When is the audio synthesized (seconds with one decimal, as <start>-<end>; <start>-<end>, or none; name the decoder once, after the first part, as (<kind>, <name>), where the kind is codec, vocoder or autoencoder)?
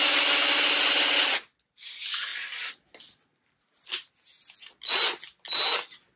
none